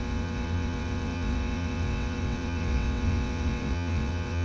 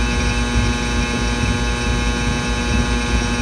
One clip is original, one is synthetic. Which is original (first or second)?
second